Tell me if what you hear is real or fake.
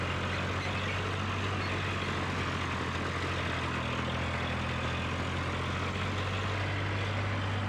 real